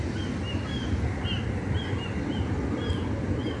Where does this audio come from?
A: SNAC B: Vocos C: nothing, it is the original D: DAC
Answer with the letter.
C